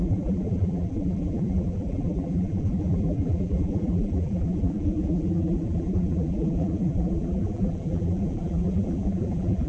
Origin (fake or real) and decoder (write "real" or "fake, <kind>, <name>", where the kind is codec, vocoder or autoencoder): fake, vocoder, BigVGAN v2